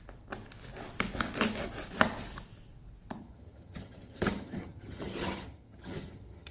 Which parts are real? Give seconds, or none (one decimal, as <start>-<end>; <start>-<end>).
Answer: 0.0-3.2